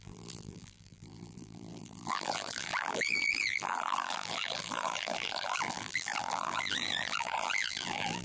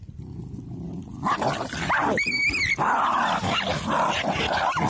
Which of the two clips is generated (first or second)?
first